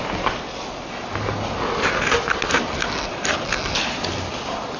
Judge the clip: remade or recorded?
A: recorded